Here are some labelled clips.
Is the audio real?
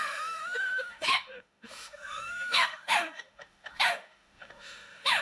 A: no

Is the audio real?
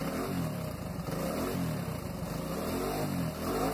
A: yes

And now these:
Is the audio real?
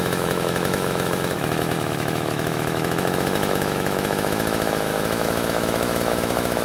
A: no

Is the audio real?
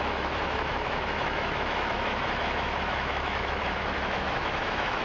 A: no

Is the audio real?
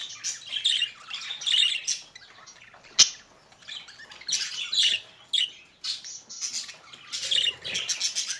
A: yes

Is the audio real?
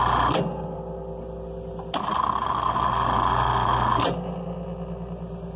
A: yes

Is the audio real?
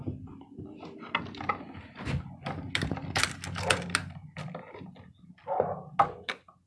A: yes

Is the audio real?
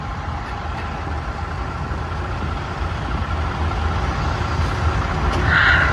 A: yes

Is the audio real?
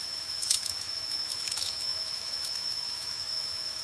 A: no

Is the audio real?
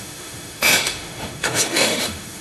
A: no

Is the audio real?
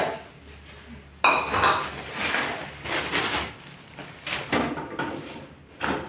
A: yes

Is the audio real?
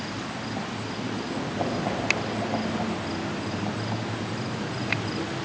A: yes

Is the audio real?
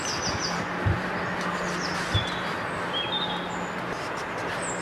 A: yes